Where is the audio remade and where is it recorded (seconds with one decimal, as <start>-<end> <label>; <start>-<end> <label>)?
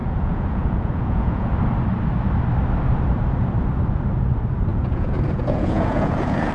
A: 0.0-1.5 remade; 1.5-4.7 recorded; 4.7-6.5 remade